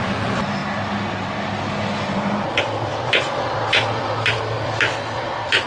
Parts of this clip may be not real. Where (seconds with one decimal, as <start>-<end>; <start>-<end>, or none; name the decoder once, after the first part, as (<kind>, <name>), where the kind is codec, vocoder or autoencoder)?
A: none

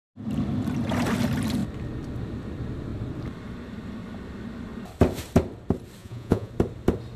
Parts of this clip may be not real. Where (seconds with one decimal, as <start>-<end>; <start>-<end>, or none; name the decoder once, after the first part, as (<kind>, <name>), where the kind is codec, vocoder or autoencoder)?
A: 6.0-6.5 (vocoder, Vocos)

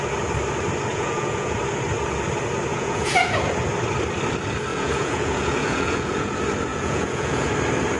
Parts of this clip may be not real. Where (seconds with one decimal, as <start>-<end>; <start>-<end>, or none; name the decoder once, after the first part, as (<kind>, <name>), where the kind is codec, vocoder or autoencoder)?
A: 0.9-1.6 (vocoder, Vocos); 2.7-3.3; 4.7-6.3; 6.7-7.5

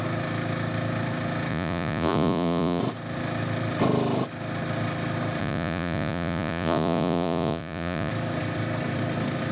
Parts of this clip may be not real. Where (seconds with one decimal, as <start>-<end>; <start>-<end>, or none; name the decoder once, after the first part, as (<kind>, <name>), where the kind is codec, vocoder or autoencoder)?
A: 1.5-2.8 (vocoder, Vocos); 5.4-8.1